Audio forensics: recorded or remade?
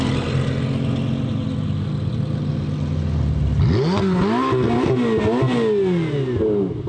recorded